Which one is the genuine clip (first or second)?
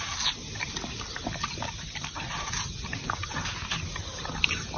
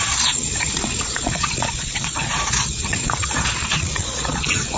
first